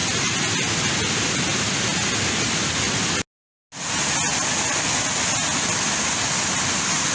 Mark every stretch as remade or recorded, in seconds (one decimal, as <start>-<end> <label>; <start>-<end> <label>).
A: 0.0-7.1 recorded